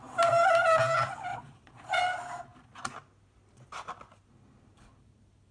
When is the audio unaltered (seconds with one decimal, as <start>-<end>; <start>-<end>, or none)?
0.0-1.3; 2.0-5.5